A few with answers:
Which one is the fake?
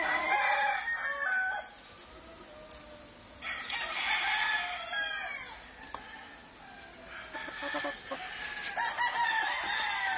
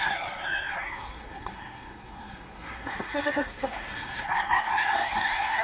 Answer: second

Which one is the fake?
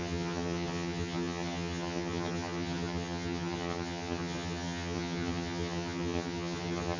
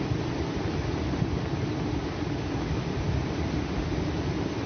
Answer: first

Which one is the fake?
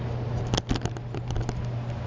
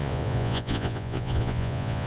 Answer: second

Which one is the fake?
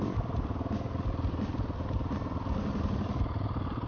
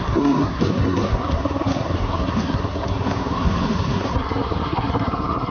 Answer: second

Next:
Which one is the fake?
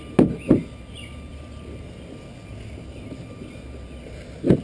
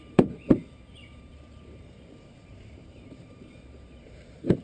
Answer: second